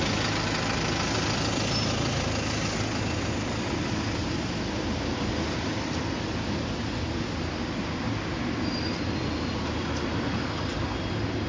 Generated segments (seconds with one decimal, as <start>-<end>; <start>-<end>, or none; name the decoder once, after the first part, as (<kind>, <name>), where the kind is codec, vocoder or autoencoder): none